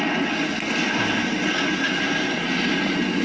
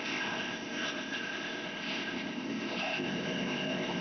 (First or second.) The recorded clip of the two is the first